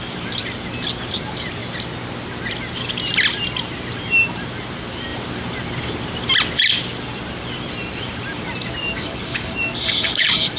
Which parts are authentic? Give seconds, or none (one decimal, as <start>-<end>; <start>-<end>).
0.0-8.8